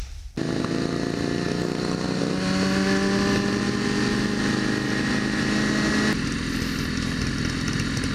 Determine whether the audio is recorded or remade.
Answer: recorded